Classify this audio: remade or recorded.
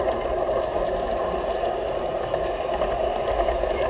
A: recorded